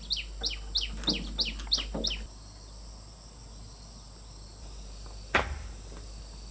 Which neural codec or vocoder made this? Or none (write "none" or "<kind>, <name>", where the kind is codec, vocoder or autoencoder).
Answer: none